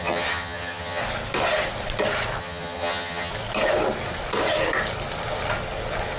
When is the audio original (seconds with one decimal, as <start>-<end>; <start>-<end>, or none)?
1.0-2.4; 3.3-6.2